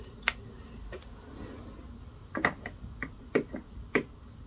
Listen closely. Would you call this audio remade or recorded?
recorded